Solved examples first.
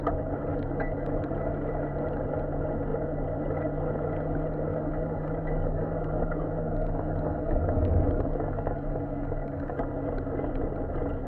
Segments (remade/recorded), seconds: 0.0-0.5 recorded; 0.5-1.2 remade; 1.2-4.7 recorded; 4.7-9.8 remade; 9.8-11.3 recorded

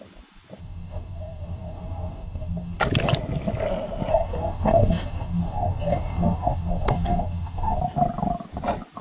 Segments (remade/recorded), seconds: 0.0-0.6 recorded; 0.6-2.8 remade; 2.8-4.1 recorded; 4.1-7.8 remade; 7.8-9.0 recorded

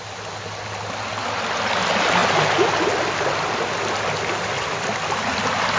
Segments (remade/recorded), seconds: 0.0-5.8 recorded

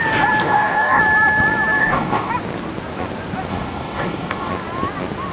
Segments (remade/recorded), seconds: 0.0-0.4 recorded; 0.4-1.0 remade; 1.0-1.8 recorded; 1.8-2.3 remade; 2.3-3.5 recorded; 3.5-4.5 remade; 4.5-5.3 recorded

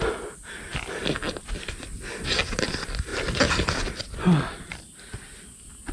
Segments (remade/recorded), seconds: 0.0-5.9 recorded

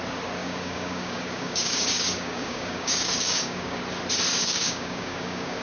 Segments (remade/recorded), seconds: 0.0-0.4 recorded; 0.4-3.8 remade; 3.8-4.3 recorded; 4.3-5.6 remade

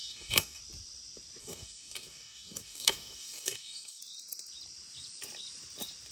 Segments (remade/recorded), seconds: 0.0-0.6 remade; 0.6-1.4 recorded; 1.4-4.0 remade; 4.0-6.1 recorded

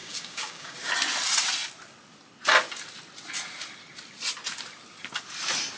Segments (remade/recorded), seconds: 0.0-0.9 remade; 0.9-5.8 recorded